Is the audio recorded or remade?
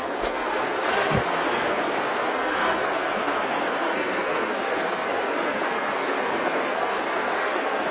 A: remade